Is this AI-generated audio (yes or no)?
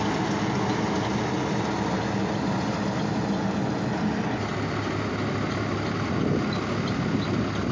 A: no